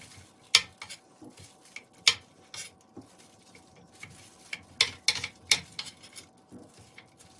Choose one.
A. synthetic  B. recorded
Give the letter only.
B